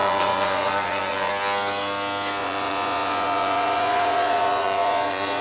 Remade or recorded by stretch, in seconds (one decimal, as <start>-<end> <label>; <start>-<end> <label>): 0.0-1.3 remade; 1.3-2.4 recorded; 2.4-5.4 remade